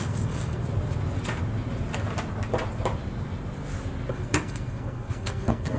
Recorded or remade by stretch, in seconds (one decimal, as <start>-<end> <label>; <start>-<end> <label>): 0.0-0.6 remade; 0.6-4.1 recorded; 4.1-5.8 remade